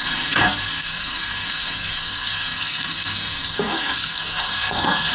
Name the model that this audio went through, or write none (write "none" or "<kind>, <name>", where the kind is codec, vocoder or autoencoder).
codec, SNAC